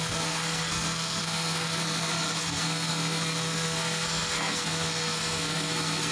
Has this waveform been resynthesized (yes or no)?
yes